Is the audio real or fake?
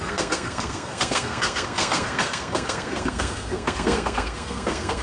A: fake